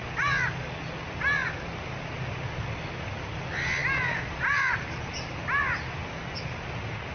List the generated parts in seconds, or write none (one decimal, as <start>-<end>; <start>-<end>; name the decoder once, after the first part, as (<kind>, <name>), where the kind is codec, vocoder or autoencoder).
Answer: none